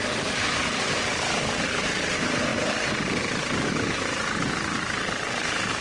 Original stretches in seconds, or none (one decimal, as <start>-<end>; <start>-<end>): none